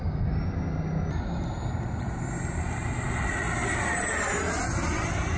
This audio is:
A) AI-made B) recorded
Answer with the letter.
B